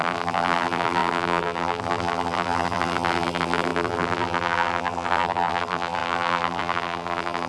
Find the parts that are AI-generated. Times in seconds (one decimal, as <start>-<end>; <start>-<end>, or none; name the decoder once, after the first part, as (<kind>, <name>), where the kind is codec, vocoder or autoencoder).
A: 0.0-7.5 (vocoder, BigVGAN v2)